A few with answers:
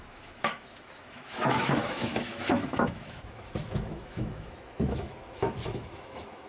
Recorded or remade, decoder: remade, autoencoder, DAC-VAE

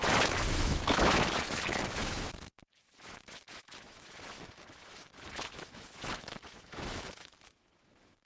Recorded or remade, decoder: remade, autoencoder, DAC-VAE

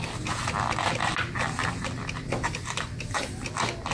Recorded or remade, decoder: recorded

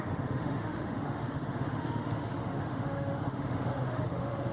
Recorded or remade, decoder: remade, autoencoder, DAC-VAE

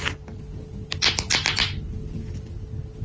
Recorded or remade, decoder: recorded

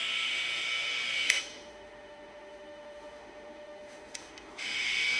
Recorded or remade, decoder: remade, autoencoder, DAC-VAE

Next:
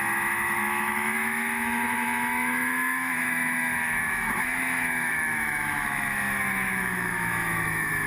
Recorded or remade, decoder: remade, autoencoder, DAC-VAE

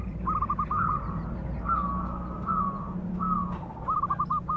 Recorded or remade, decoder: recorded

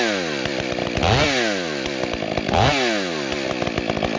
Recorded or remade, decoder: recorded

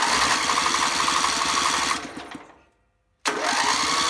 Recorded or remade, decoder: recorded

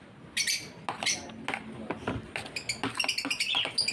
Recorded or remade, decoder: recorded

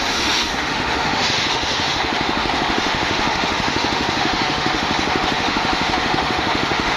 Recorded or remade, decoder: remade, autoencoder, DAC-VAE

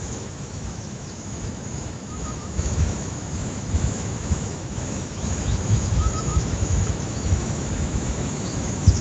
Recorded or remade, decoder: remade, autoencoder, DAC-VAE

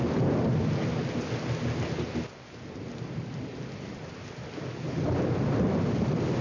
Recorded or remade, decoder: recorded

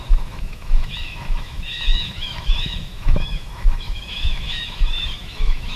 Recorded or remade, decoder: remade, autoencoder, DAC-VAE